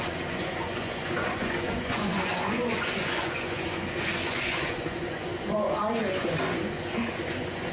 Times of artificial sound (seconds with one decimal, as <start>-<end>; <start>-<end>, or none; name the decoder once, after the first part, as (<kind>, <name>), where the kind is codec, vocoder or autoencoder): 0.0-7.7 (vocoder, Vocos)